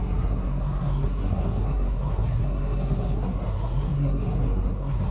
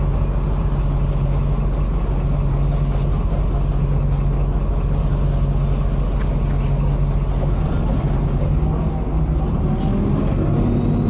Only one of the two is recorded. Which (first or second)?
second